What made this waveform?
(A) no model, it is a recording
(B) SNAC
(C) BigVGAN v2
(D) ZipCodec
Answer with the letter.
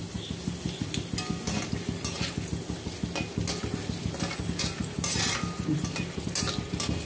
A